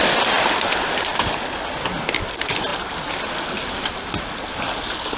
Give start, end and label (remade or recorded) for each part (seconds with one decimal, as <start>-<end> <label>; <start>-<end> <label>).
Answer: 0.0-5.2 recorded